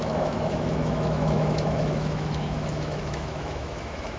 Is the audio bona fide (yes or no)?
no